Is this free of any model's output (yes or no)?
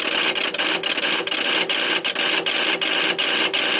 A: yes